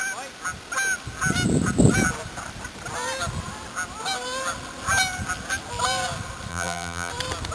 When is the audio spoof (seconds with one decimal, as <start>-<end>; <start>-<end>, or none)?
6.5-7.1